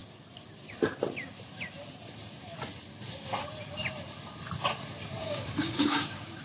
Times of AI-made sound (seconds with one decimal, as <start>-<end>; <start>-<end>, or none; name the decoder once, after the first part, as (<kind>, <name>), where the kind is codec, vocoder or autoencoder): 5.2-6.4 (codec, DAC)